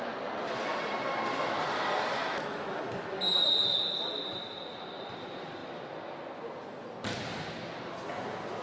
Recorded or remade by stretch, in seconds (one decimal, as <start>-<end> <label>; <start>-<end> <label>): 0.0-2.2 recorded; 2.2-2.9 remade; 2.9-8.6 recorded